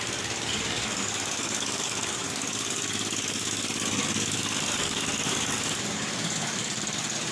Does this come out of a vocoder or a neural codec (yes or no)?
yes